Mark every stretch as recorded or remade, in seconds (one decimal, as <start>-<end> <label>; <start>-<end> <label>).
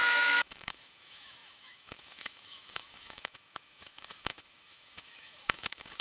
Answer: 0.0-6.0 remade